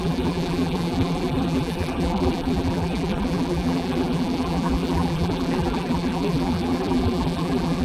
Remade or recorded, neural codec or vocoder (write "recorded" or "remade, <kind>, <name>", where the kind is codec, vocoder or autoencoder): remade, vocoder, BigVGAN v2